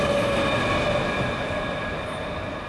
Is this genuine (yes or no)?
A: yes